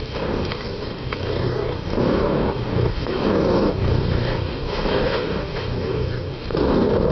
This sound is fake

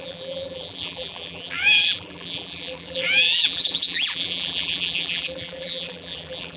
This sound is fake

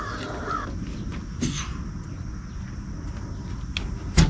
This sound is real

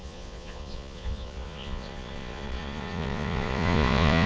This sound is fake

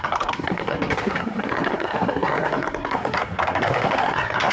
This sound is fake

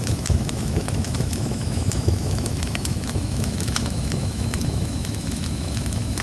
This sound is fake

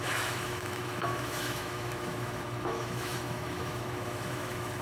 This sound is fake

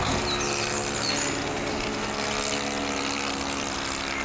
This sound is real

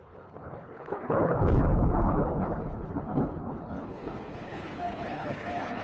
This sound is fake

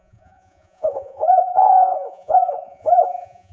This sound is fake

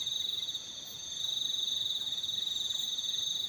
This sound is fake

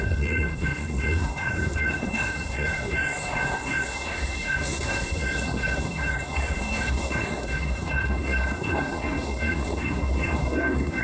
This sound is fake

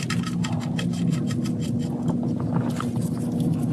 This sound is real